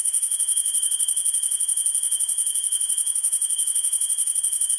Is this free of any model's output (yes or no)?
no